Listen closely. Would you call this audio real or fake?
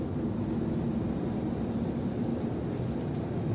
real